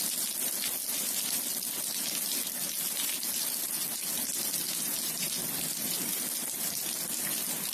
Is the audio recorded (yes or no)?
yes